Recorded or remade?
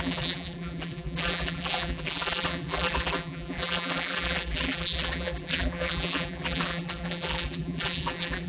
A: remade